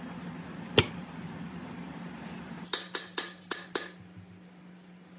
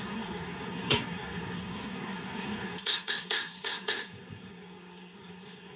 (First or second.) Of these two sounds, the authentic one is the first